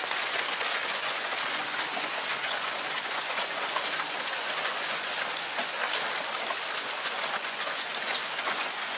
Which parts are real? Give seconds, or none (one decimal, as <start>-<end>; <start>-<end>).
5.8-6.8